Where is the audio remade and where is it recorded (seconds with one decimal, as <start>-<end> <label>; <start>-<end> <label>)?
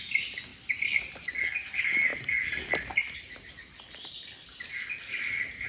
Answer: 0.0-5.7 recorded